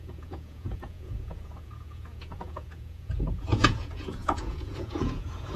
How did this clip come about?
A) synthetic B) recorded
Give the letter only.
A